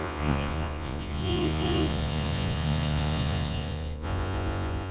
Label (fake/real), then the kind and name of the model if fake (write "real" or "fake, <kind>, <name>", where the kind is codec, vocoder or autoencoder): fake, vocoder, Vocos